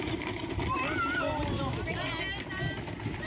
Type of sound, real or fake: real